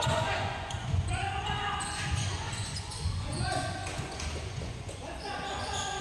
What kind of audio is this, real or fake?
fake